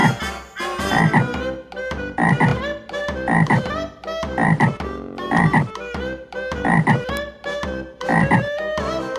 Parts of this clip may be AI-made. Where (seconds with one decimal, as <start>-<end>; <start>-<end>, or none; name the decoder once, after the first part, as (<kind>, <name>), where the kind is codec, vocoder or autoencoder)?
0.9-9.2 (vocoder, BigVGAN v2)

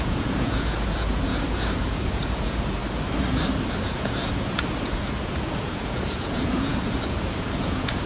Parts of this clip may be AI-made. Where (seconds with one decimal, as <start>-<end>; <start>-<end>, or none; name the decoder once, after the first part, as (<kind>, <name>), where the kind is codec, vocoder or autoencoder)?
0.0-2.8 (vocoder, Vocos); 3.7-8.1

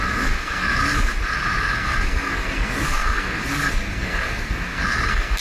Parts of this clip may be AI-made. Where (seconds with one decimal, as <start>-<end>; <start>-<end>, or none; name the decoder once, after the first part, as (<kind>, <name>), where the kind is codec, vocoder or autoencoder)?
0.0-0.8 (codec, SNAC); 1.6-5.4

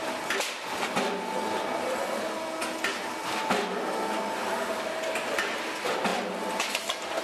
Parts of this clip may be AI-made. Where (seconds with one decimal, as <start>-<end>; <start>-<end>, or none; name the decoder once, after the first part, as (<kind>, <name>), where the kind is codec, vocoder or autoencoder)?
none